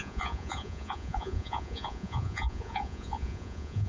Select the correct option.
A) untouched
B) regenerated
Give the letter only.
B